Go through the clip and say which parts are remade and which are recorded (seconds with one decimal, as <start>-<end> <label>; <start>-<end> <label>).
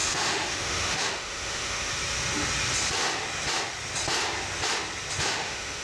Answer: 0.0-1.9 remade; 1.9-5.2 recorded; 5.2-5.8 remade